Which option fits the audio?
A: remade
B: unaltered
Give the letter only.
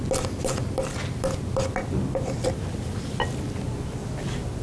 B